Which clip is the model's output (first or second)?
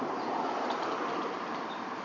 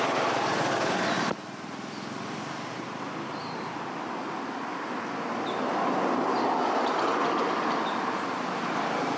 first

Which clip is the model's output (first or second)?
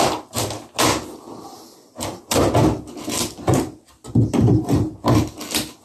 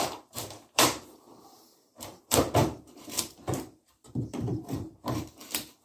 second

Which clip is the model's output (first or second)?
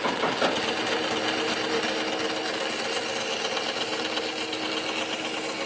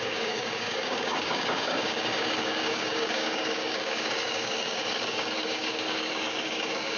second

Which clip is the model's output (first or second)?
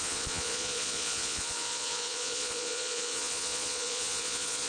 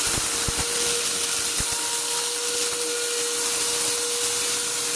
first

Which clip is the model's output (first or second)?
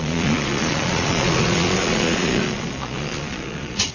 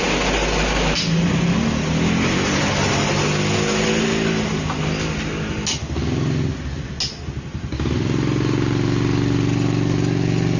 first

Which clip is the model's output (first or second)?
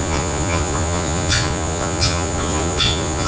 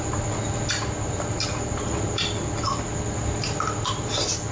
first